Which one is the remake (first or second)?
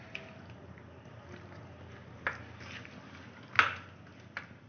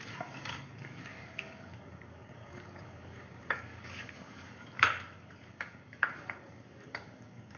second